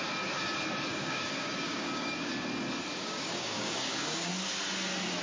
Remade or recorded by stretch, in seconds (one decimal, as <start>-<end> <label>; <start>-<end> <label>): 0.0-0.9 recorded; 0.9-2.3 remade; 2.3-3.0 recorded; 3.0-4.3 remade; 4.3-5.2 recorded